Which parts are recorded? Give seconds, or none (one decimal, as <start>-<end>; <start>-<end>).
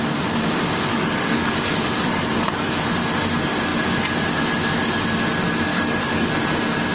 0.0-0.9; 2.8-5.7; 6.3-6.9